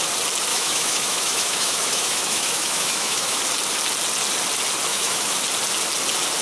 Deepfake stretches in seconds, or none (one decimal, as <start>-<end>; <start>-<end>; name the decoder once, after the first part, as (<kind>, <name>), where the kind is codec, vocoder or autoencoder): 0.5-3.4 (autoencoder, DAC-VAE); 4.9-5.4